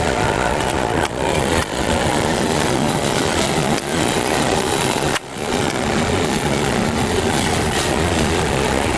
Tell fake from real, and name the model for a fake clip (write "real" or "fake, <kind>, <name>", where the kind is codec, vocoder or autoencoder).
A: fake, vocoder, Vocos